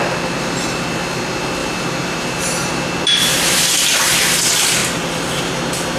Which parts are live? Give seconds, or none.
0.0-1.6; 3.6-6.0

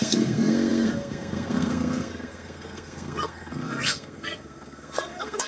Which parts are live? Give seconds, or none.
none

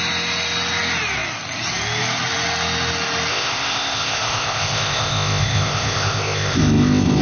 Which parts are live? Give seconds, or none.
0.0-3.3